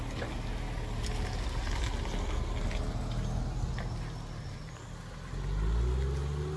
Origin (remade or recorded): recorded